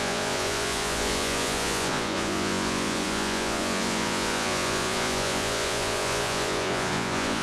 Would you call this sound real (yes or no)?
no